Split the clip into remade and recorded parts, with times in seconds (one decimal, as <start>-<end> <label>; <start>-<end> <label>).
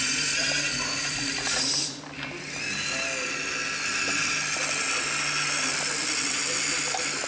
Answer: 0.0-0.4 recorded; 0.4-2.0 remade; 2.0-7.3 recorded